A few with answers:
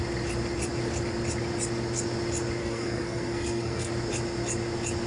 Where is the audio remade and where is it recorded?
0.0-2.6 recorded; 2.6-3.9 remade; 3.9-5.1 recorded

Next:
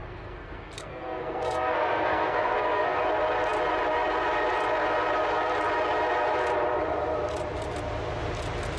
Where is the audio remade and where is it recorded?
0.0-3.0 remade; 3.0-8.8 recorded

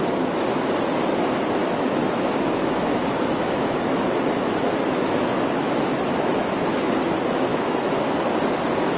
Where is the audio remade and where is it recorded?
0.0-1.6 recorded; 1.6-6.5 remade; 6.5-7.5 recorded; 7.5-8.4 remade; 8.4-9.0 recorded

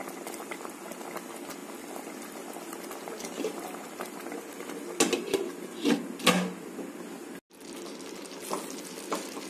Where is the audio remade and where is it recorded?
0.0-9.5 recorded

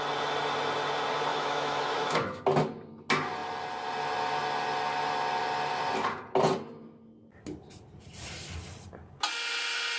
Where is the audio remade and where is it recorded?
0.0-1.3 recorded; 1.3-2.4 remade; 2.4-10.0 recorded

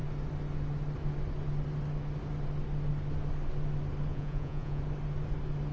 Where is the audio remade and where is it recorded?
0.0-4.1 recorded; 4.1-4.8 remade; 4.8-5.7 recorded